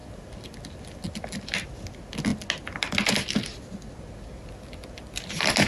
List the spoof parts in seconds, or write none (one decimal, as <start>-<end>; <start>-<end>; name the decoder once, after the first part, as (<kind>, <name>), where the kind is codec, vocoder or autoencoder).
none